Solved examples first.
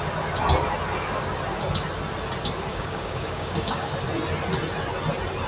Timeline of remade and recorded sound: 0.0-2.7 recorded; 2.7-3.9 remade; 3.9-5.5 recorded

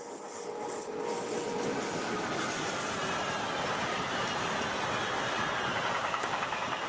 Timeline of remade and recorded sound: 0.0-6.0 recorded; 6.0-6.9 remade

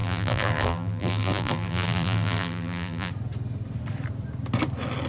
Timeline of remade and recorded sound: 0.0-3.1 remade; 3.1-5.1 recorded

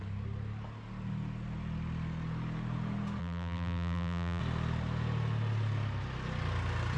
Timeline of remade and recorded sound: 0.0-3.2 recorded; 3.2-4.4 remade; 4.4-7.0 recorded

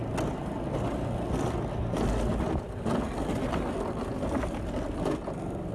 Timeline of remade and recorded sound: 0.0-5.7 recorded

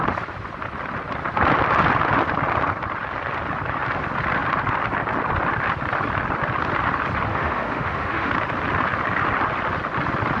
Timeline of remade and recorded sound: 0.0-7.3 recorded; 7.3-8.3 remade; 8.3-10.4 recorded